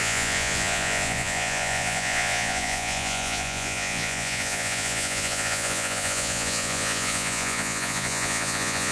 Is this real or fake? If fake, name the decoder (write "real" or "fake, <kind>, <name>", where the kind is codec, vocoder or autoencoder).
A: fake, vocoder, Vocos